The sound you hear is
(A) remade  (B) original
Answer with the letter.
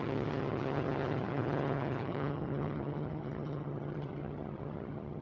A